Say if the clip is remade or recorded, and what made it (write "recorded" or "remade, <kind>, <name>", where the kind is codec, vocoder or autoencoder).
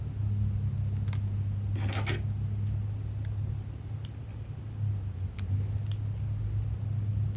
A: recorded